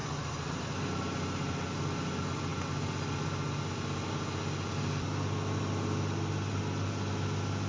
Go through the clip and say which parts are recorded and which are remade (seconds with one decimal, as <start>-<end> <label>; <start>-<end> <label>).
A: 0.0-7.7 recorded